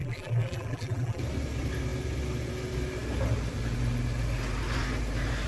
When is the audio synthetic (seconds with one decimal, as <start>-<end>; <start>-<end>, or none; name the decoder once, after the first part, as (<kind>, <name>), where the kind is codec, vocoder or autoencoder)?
0.0-1.2 (vocoder, BigVGAN v2)